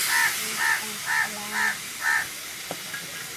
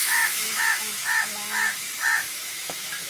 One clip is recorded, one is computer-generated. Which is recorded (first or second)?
first